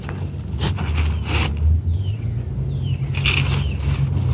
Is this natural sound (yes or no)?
yes